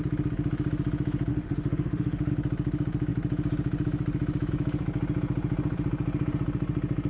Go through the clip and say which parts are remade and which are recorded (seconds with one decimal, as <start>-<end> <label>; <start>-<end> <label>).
0.0-1.3 recorded; 1.3-2.3 remade; 2.3-7.1 recorded